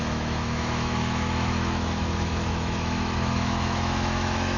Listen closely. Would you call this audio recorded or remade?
remade